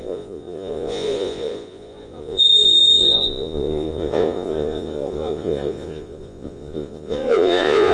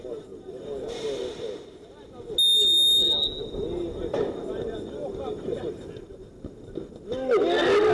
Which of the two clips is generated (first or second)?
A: first